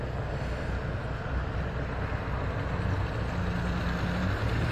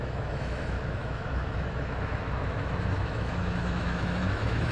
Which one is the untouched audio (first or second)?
first